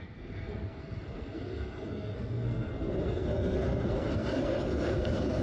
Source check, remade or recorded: remade